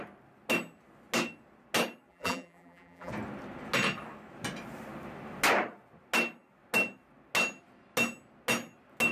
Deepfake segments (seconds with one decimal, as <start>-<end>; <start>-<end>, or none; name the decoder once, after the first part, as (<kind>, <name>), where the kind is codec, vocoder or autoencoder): 2.1-3.1 (vocoder, BigVGAN v2)